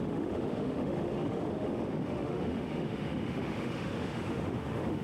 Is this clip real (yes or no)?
no